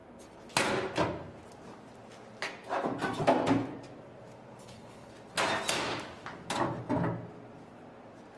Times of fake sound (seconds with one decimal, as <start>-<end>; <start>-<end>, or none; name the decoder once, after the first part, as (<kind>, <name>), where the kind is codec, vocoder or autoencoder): 4.6-5.1 (codec, HILCodec)